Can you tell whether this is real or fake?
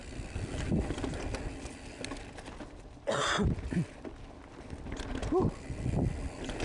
real